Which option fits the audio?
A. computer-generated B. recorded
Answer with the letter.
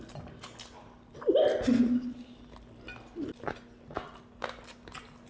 B